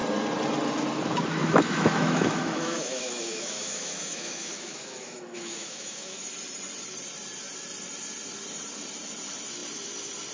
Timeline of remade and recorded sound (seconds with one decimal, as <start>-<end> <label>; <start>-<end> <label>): 0.0-1.4 recorded; 1.4-6.2 remade; 6.2-10.3 recorded